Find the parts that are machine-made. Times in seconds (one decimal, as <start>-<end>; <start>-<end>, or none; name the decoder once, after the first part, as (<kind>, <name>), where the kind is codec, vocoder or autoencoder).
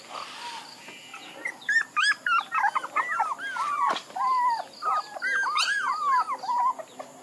none